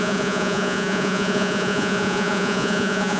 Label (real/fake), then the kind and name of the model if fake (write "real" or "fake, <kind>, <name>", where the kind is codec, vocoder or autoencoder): fake, vocoder, Vocos